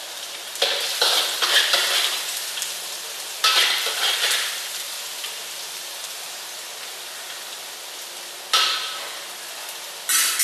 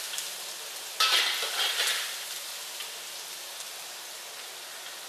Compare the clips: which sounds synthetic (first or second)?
first